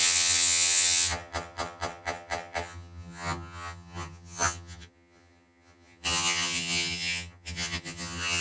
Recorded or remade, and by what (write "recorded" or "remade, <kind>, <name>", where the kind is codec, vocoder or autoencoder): remade, vocoder, HiFi-GAN